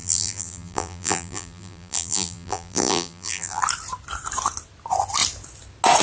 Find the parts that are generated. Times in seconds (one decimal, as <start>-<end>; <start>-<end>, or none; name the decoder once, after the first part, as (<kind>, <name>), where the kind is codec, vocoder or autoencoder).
0.0-3.6 (vocoder, BigVGAN v2)